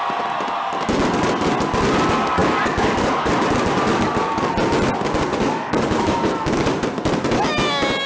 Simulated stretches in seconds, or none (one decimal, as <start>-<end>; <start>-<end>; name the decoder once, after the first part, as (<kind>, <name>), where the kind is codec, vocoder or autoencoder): 2.4-3.3 (codec, DAC); 3.9-4.5; 5.3-6.7

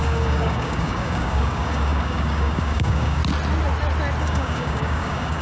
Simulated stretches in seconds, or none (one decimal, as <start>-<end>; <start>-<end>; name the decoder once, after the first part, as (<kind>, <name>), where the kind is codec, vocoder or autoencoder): 0.0-3.2 (codec, DAC); 4.2-5.4

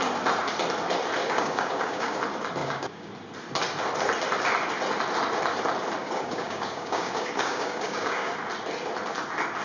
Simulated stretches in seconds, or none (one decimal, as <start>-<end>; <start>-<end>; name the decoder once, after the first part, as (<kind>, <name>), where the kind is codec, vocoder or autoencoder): 1.2-2.2 (codec, DAC); 2.6-3.1; 6.0-8.3

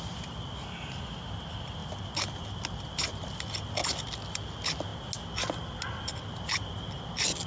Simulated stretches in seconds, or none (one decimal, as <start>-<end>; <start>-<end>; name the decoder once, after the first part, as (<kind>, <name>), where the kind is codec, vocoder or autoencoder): none